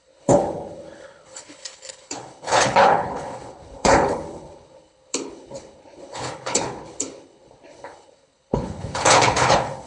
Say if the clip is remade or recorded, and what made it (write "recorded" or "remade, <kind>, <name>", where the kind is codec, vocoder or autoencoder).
remade, codec, HILCodec